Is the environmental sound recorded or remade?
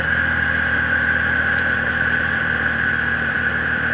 remade